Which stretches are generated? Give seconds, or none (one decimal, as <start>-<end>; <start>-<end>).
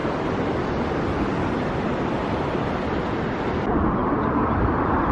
none